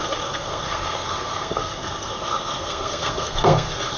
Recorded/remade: remade